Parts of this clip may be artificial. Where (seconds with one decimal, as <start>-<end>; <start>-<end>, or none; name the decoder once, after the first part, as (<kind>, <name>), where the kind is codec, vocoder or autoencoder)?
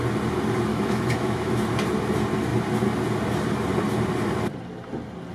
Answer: 0.7-1.6 (autoencoder, DAC-VAE)